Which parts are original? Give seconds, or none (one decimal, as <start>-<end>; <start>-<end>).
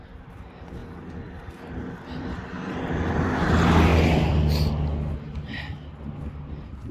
0.8-2.0; 3.9-6.0